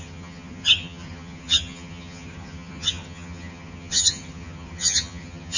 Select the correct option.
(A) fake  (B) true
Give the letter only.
A